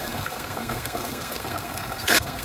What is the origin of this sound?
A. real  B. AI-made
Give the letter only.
B